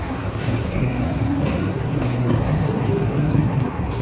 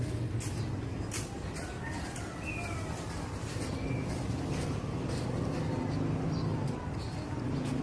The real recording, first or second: second